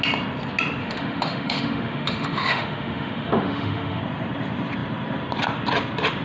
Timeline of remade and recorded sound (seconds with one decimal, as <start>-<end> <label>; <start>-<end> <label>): 0.0-0.8 recorded; 0.8-4.0 remade; 4.0-6.2 recorded